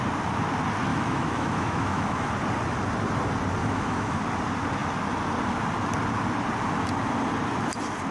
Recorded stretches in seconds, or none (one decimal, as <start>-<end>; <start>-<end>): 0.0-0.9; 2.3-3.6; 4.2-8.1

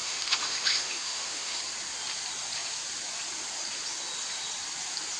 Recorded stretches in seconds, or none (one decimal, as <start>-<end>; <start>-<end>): 1.6-5.2

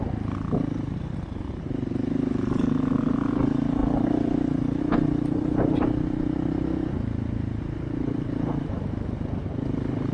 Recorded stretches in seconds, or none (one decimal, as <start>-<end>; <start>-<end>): 0.0-10.1

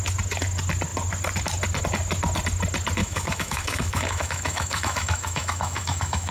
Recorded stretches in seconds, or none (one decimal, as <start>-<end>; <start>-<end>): 0.0-3.0